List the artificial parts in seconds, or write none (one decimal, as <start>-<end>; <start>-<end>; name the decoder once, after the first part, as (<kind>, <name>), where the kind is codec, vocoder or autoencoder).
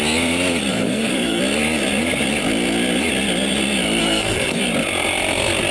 0.7-1.4 (codec, SNAC); 4.0-4.6